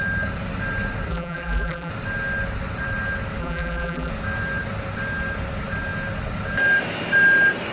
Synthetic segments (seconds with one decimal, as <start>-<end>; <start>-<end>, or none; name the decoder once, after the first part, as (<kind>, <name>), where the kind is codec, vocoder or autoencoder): 1.1-1.9 (vocoder, BigVGAN v2); 3.4-4.1